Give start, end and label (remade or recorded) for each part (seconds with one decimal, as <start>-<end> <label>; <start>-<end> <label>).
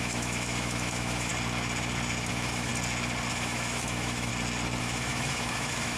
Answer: 0.0-1.3 remade; 1.3-2.3 recorded; 2.3-2.7 remade; 2.7-3.3 recorded; 3.3-4.3 remade; 4.3-4.8 recorded; 4.8-6.0 remade